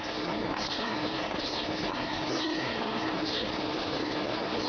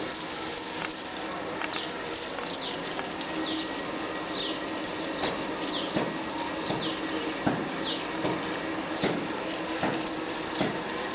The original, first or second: second